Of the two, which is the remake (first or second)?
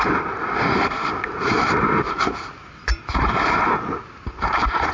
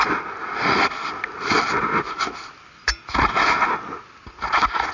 first